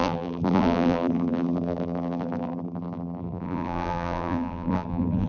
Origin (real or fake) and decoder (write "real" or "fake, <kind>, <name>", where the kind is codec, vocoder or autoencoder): fake, vocoder, BigVGAN v2